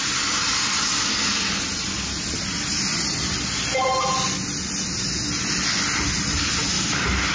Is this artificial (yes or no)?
no